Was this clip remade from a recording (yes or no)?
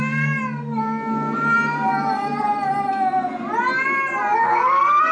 no